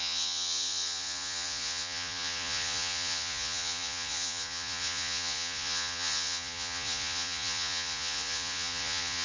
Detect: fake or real fake